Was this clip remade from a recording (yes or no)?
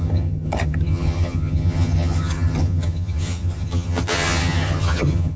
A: yes